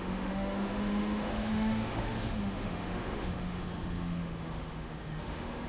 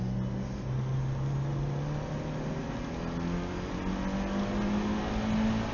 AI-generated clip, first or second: first